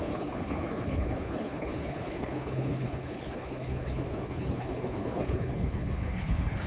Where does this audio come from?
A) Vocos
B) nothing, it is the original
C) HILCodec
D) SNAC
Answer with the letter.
C